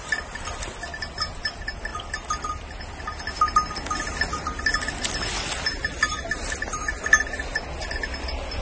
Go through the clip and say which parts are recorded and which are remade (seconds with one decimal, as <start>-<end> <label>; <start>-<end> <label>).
0.0-8.6 recorded